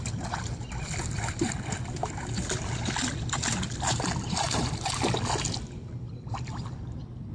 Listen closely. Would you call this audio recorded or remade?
recorded